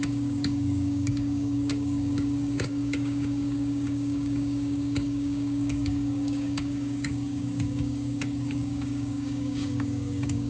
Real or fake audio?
fake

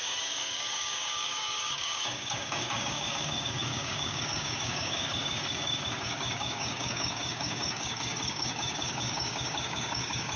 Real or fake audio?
fake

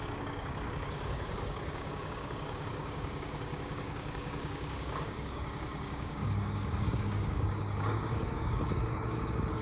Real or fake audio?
fake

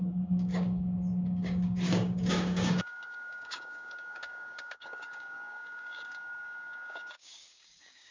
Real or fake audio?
fake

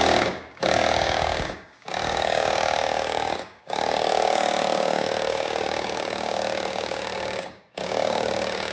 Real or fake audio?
fake